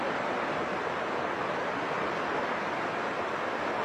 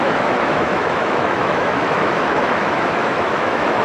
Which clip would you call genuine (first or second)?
first